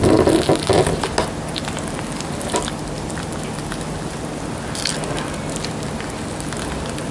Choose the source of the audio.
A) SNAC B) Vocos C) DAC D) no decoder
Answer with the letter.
D